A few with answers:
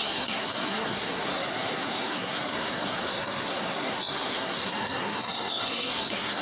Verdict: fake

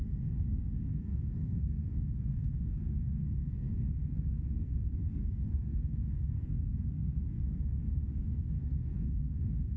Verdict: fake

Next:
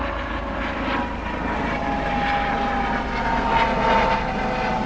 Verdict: real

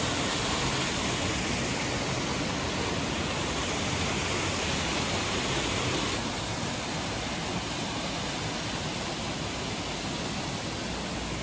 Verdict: real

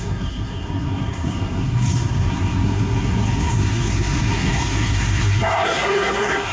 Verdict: fake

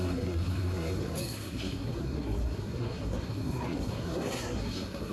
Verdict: fake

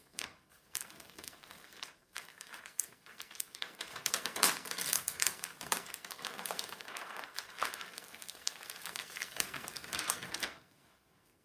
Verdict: fake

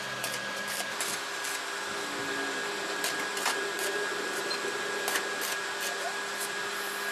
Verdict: real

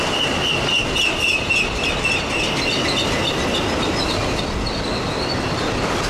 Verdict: real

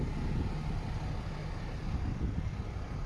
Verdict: real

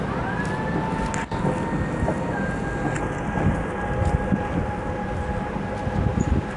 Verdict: real